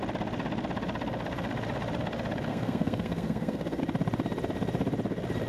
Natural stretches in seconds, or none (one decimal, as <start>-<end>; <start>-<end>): 0.0-2.5; 3.8-5.5